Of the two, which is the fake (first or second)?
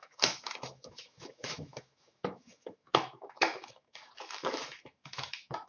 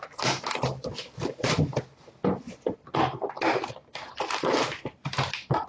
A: first